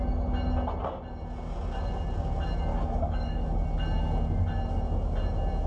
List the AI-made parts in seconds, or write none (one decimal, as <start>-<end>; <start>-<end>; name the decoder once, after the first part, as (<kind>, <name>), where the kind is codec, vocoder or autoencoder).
2.7-3.6 (codec, DAC)